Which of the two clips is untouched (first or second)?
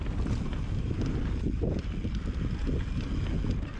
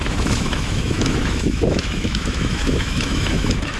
first